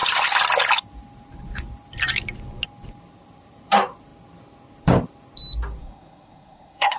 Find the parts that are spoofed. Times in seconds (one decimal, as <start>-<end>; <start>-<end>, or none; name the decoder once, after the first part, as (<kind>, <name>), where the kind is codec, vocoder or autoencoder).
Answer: 5.8-7.0 (codec, SNAC)